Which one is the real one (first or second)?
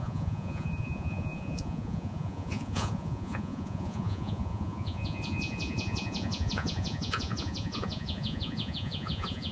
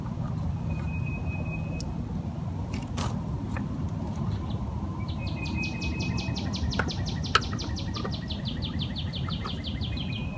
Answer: second